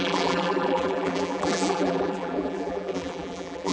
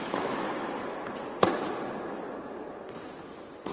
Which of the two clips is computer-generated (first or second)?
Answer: first